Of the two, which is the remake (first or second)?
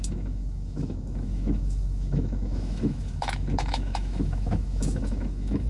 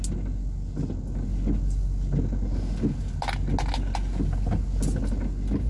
first